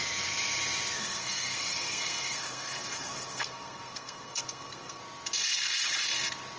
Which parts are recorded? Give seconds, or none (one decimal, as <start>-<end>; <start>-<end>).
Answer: 0.0-1.0; 5.0-6.6

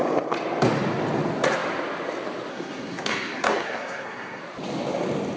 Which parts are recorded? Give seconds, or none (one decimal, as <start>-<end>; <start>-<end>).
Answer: 0.0-2.5; 4.4-5.4

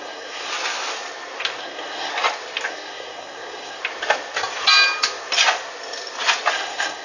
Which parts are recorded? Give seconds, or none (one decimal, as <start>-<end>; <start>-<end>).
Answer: 0.5-1.6; 2.1-2.7; 3.8-6.5

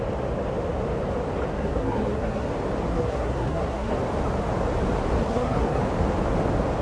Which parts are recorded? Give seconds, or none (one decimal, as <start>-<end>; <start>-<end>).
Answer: 0.0-1.5; 2.5-2.9; 3.9-5.2; 5.8-6.8

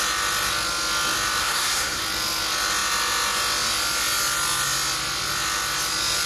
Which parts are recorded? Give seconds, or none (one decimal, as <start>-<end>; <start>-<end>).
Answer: 0.0-1.4; 2.0-6.3

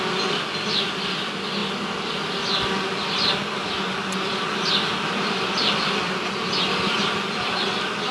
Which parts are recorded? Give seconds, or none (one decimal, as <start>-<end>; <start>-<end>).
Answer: 0.0-8.1